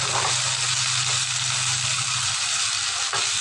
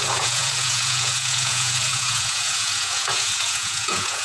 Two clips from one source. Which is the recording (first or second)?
first